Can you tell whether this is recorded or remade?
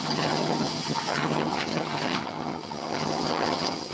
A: remade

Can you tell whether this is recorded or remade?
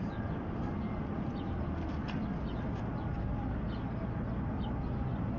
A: recorded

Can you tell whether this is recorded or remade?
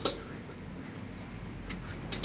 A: recorded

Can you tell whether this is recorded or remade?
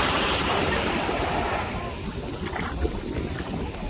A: recorded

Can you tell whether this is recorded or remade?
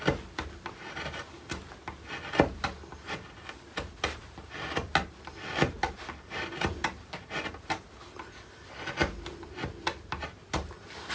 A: recorded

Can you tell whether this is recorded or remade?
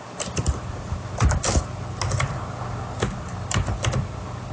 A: recorded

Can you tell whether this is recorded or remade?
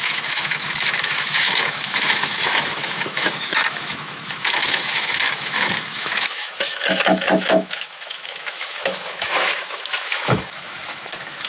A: remade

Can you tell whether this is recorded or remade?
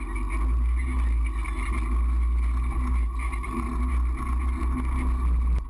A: recorded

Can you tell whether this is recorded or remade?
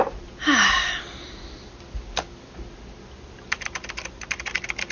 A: recorded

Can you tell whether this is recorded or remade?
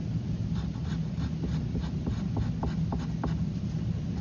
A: recorded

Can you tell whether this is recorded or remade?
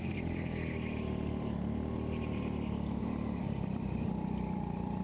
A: recorded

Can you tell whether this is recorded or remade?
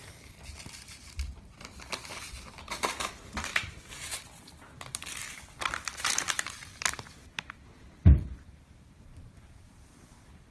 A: recorded